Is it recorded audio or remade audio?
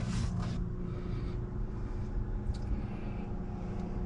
recorded